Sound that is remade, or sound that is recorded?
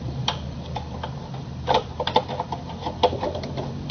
remade